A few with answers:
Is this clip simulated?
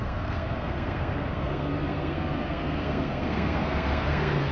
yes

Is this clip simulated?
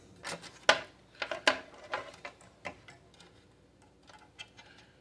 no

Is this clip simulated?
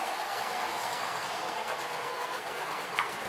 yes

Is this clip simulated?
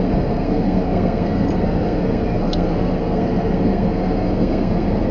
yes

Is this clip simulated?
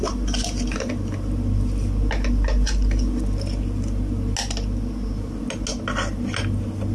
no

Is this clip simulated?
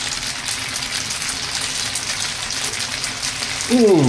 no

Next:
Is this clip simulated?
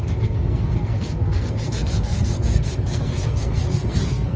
yes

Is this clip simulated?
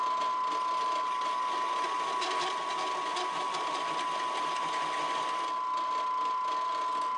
no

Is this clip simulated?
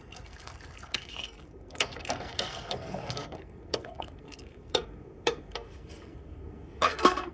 yes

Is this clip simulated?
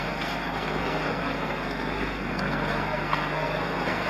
yes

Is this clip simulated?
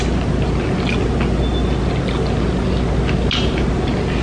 no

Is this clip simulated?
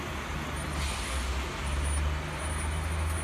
no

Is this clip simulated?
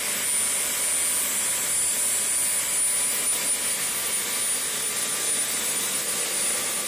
no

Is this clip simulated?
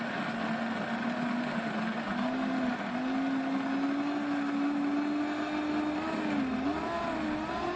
no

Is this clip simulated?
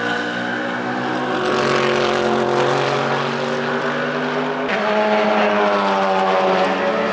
no